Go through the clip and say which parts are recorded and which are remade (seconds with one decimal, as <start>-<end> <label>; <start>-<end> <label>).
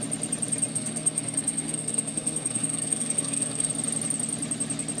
0.0-0.7 recorded; 0.7-3.7 remade; 3.7-5.0 recorded